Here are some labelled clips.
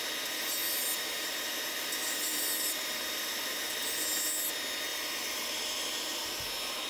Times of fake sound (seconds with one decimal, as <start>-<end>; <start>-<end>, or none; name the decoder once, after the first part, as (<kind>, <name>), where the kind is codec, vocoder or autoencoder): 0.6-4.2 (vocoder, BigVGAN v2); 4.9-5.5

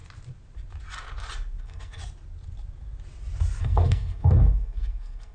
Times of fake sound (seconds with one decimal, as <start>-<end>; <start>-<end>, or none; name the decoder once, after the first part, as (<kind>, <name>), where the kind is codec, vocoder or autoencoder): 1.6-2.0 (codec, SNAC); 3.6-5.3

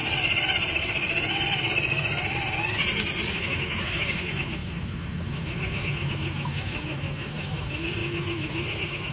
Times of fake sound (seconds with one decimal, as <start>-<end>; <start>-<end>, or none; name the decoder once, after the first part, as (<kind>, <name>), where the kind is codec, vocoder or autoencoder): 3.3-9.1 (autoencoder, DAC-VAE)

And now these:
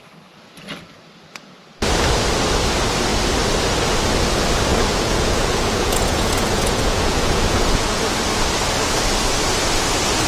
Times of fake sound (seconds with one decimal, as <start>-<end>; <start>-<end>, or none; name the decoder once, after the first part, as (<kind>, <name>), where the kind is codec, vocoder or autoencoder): 4.7-8.0 (vocoder, Vocos)

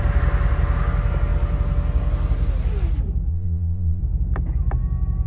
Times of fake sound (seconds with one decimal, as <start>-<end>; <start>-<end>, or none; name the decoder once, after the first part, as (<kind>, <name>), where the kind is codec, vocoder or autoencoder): 3.3-4.0 (vocoder, Vocos)

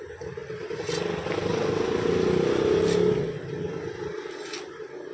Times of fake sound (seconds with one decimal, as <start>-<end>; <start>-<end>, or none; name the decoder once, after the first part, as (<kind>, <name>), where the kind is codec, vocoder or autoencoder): none

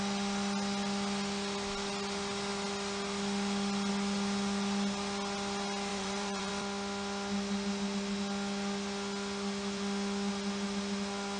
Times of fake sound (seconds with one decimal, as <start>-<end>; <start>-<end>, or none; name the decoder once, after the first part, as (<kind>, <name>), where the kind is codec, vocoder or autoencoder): 5.9-6.5 (vocoder, Vocos)